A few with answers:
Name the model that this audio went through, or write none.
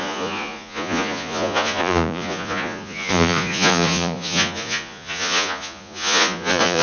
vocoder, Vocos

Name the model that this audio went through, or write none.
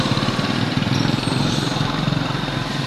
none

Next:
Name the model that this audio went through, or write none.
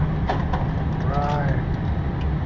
none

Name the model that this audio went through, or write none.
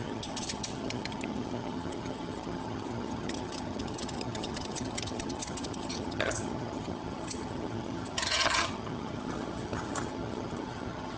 vocoder, HiFi-GAN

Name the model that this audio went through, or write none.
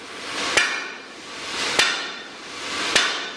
none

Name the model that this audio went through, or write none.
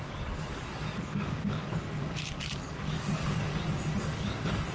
codec, DAC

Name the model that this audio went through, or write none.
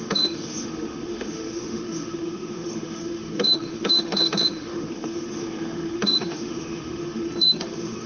autoencoder, DAC-VAE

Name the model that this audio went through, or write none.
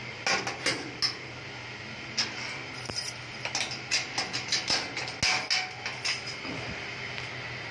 none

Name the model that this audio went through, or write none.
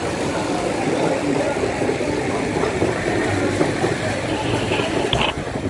vocoder, BigVGAN v2